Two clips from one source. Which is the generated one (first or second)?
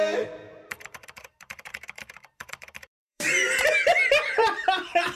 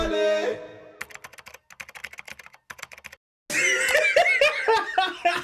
first